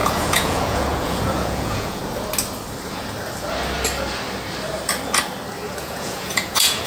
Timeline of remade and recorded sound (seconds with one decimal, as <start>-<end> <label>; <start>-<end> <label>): 0.0-2.0 remade; 2.0-5.8 recorded; 5.8-6.9 remade